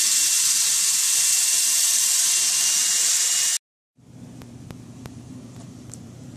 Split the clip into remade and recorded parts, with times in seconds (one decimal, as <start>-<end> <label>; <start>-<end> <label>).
0.0-6.4 recorded

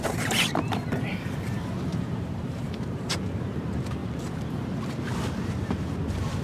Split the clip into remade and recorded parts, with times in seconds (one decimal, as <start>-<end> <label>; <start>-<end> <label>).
0.0-1.9 recorded; 1.9-3.0 remade; 3.0-4.0 recorded; 4.0-4.5 remade; 4.5-6.4 recorded

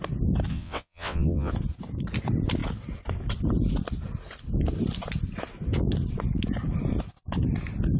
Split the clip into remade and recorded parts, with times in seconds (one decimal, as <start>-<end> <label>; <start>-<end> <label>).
0.0-0.5 recorded; 0.5-1.5 remade; 1.5-8.0 recorded

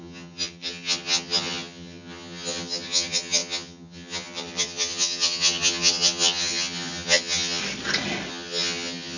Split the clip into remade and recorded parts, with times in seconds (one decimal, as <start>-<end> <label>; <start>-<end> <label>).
0.0-7.6 remade; 7.6-8.3 recorded; 8.3-9.2 remade

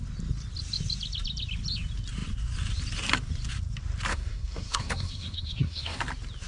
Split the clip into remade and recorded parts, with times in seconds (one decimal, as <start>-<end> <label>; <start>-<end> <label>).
0.0-4.1 recorded; 4.1-6.0 remade; 6.0-6.5 recorded

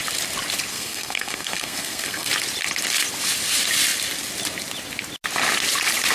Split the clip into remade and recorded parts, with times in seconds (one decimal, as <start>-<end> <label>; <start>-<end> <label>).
0.0-0.7 recorded; 0.7-2.3 remade; 2.3-6.1 recorded

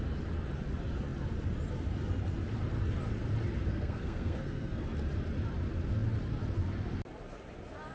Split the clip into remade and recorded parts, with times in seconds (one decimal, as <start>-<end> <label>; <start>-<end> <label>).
0.0-3.7 recorded; 3.7-4.8 remade; 4.8-7.9 recorded